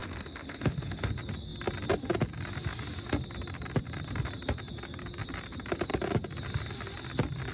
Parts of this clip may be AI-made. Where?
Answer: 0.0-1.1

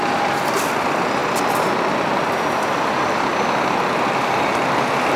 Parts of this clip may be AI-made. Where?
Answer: none

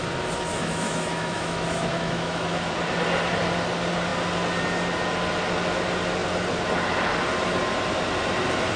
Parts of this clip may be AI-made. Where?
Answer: 0.5-2.7

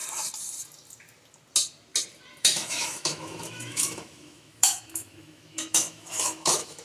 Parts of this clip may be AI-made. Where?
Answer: 2.4-6.8

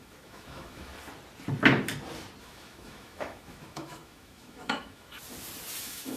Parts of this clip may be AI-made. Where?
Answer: 0.0-0.9; 2.4-5.2; 5.8-6.2

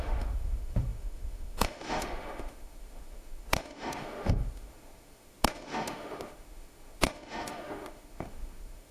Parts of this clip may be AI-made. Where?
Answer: 0.0-8.9